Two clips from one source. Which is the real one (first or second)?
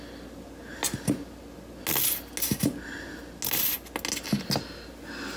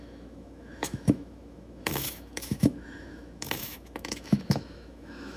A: first